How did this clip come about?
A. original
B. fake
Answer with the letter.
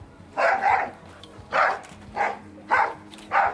B